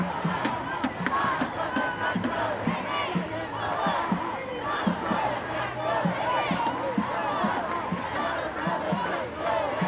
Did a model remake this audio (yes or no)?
yes